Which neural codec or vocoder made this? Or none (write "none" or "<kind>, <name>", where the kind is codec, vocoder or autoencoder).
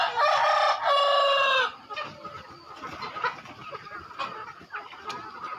none